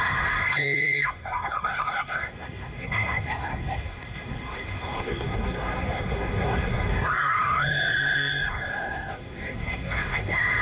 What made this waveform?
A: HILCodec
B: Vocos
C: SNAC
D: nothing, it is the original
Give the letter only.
C